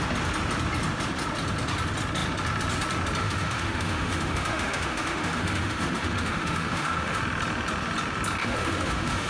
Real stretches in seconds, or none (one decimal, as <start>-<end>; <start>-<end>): 0.0-3.2; 7.2-8.4